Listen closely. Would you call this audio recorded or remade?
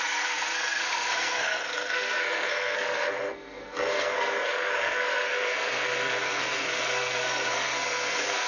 remade